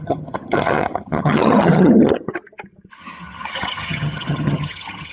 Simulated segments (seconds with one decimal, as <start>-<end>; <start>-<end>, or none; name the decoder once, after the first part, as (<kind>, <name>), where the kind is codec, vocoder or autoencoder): 0.0-2.3 (vocoder, HiFi-GAN); 3.0-5.1